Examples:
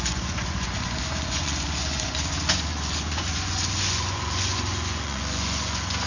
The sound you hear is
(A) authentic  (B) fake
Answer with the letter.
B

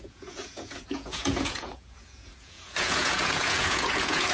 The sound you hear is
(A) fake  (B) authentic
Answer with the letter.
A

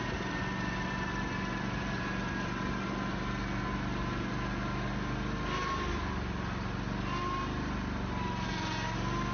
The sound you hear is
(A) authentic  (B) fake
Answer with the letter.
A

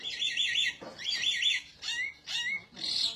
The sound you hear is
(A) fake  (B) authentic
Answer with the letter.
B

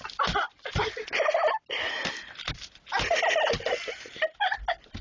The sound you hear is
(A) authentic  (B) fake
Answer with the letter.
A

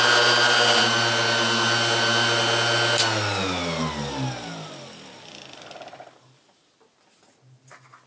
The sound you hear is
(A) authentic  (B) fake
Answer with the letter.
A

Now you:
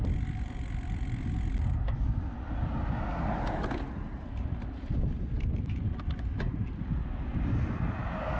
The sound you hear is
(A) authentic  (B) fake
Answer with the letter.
A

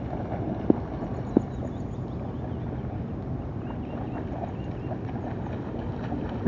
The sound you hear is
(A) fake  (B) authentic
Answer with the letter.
B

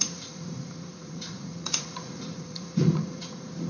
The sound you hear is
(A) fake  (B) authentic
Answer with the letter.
A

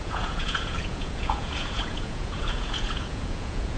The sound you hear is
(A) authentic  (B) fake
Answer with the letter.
B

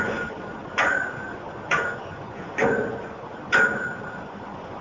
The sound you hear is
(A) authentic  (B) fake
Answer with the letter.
B